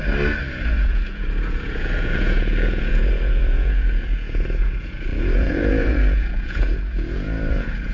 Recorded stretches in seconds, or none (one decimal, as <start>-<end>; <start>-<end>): 0.0-0.5